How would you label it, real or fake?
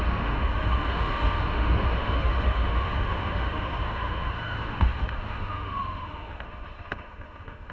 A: fake